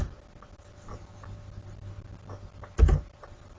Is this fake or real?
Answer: real